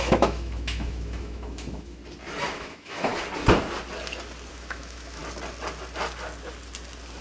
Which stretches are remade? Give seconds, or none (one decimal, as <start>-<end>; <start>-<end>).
0.0-2.0; 2.5-3.1; 4.5-5.2